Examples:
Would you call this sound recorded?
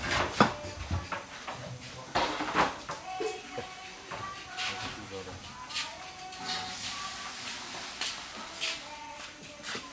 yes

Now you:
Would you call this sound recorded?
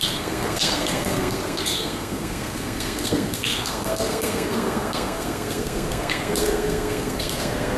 no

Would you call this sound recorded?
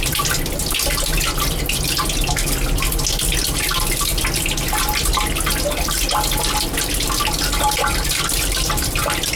yes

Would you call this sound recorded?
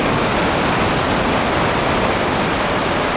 yes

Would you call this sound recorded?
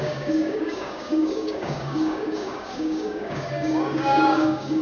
no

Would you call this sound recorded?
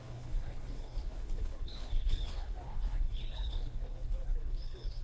no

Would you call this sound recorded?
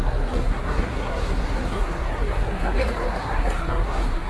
no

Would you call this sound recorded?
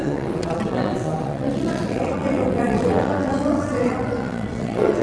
no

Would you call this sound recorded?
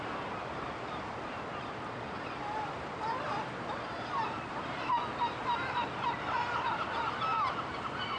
no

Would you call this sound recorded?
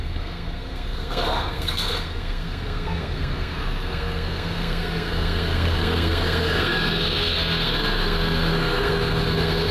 no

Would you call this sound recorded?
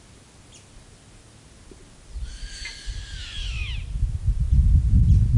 yes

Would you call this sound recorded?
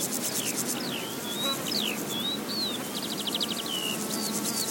yes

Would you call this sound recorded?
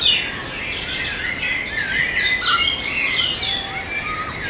yes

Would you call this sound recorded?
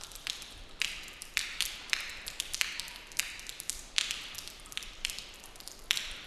no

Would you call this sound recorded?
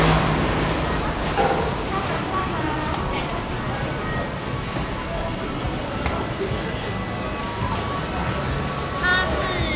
yes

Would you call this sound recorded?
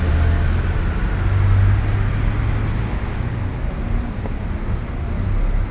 yes